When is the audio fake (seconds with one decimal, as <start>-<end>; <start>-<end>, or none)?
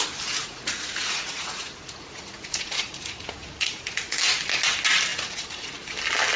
0.4-4.2; 5.1-5.7